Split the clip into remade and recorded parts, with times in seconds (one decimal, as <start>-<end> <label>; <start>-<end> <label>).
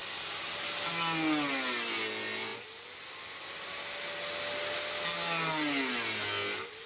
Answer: 0.0-6.9 recorded